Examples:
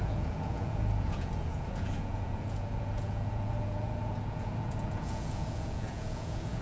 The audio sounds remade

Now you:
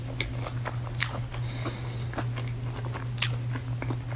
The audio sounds recorded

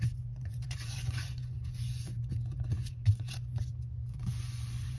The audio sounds remade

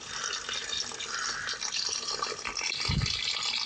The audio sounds recorded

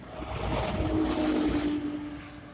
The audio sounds recorded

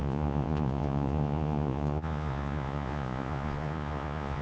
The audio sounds remade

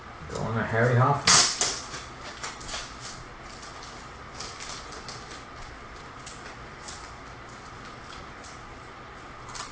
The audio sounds recorded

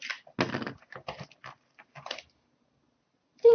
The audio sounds recorded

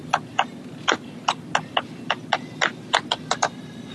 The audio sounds recorded